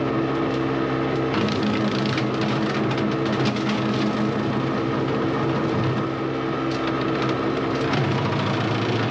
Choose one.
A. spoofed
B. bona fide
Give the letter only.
B